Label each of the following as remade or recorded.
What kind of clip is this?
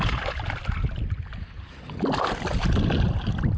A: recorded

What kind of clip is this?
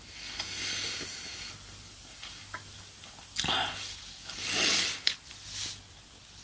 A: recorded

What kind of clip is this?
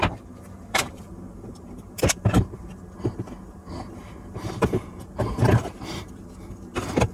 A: remade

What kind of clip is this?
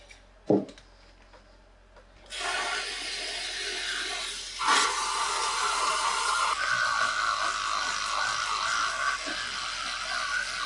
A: recorded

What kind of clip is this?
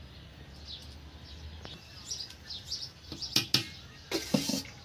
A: recorded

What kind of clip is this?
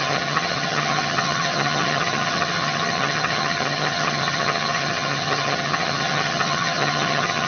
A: remade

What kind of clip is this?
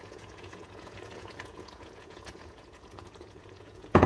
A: remade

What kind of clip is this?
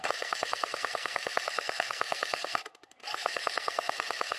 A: remade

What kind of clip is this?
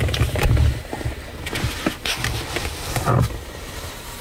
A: recorded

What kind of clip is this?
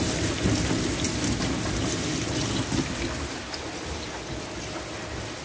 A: recorded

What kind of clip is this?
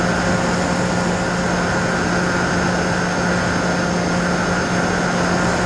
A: recorded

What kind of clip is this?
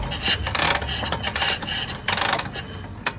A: recorded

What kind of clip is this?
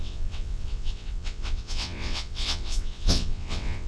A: remade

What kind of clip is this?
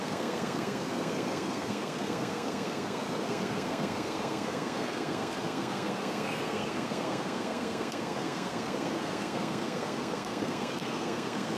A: remade